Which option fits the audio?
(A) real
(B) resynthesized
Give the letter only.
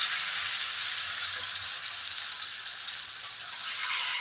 B